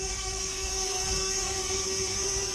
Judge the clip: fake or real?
fake